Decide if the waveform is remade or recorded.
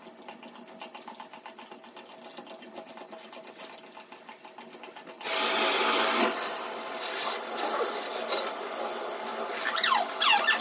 recorded